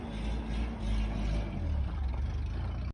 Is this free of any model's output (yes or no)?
yes